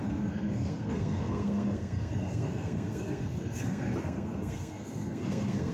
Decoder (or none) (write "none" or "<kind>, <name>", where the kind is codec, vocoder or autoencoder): codec, SNAC